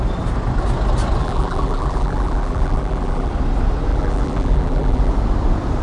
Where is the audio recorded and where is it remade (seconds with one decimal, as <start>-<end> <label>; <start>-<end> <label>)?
0.0-1.2 recorded; 1.2-3.3 remade; 3.3-3.9 recorded; 3.9-5.1 remade; 5.1-5.8 recorded